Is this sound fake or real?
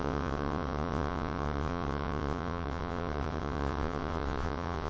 fake